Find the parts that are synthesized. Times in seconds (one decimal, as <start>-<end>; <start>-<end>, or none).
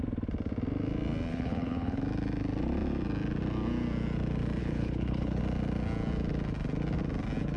1.3-2.0; 4.6-5.4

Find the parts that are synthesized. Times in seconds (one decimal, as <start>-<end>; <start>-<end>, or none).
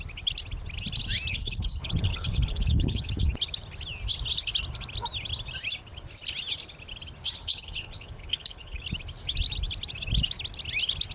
1.3-3.3; 7.4-8.8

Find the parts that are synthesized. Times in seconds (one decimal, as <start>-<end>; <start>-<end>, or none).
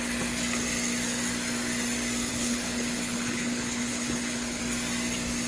2.3-4.6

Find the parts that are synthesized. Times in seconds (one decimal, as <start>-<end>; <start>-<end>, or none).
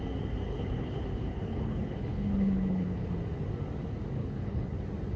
0.5-3.1; 4.2-4.8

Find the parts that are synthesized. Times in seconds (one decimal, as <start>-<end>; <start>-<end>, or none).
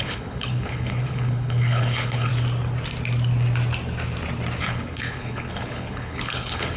0.0-2.3; 4.6-6.8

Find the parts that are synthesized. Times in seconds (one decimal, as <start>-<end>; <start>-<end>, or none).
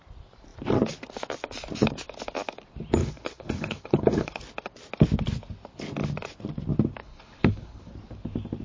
3.0-4.4; 7.0-7.9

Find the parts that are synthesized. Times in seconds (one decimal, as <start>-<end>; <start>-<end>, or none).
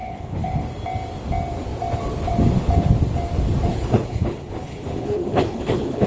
0.0-0.6; 3.7-6.1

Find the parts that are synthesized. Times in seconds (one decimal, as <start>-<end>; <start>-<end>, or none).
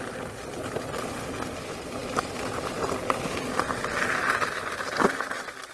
none